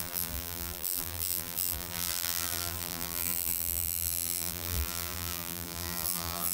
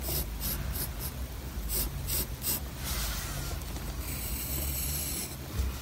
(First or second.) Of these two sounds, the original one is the second